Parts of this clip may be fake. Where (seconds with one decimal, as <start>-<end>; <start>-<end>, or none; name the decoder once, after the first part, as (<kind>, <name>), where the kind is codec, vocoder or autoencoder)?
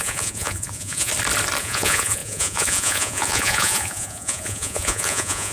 0.0-1.1 (vocoder, Vocos); 1.6-5.5